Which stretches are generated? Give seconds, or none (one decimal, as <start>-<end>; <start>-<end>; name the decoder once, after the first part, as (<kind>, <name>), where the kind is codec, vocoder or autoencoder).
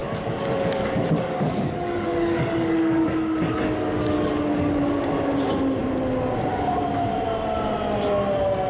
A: 0.0-4.8 (codec, DAC)